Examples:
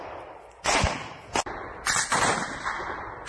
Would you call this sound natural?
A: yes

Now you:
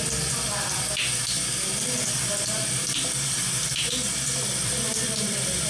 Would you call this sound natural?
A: no